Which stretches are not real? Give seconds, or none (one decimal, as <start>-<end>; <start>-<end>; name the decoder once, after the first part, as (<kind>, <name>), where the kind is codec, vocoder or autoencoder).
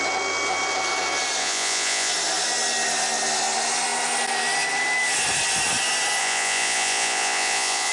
1.4-2.1 (vocoder, Vocos); 6.2-7.9